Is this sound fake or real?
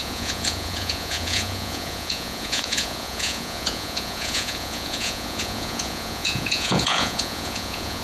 fake